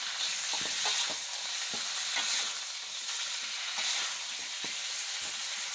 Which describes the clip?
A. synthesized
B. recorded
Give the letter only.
B